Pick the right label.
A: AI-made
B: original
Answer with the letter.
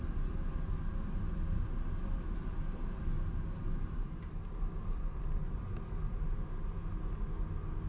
B